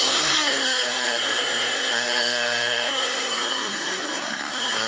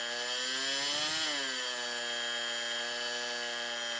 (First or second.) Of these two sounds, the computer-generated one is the first